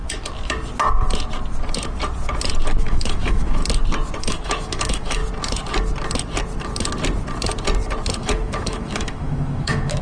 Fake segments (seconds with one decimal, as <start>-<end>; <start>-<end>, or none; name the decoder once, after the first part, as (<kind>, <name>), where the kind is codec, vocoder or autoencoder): 2.8-3.6 (autoencoder, DAC-VAE); 4.2-5.2; 8.2-10.0